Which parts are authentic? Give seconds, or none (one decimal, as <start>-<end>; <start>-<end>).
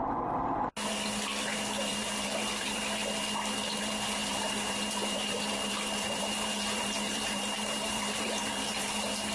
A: 0.0-1.9; 3.0-3.8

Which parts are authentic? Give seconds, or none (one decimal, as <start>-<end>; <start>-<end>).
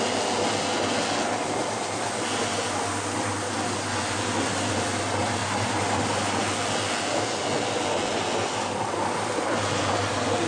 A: 0.0-10.5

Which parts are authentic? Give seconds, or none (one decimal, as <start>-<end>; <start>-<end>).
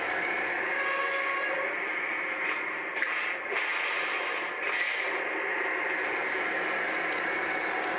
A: 0.0-8.0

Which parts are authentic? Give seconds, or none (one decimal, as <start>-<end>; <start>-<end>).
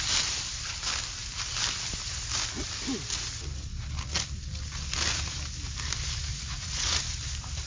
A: 0.0-6.3; 7.0-7.7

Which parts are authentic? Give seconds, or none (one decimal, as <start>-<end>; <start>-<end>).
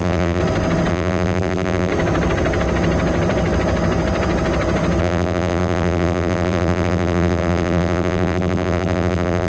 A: 0.4-0.9; 1.9-5.0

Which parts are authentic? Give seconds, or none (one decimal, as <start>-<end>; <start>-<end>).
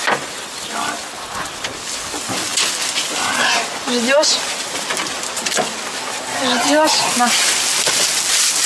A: 0.0-8.7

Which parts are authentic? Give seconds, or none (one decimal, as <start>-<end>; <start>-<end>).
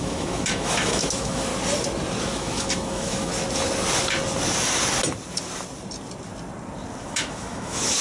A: 1.5-2.2; 3.3-7.0